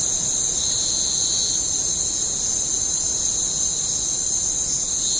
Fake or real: real